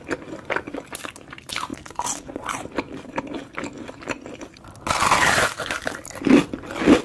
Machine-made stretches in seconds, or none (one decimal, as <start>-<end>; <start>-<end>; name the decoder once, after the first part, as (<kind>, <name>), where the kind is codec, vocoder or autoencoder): 5.0-7.0 (vocoder, BigVGAN v2)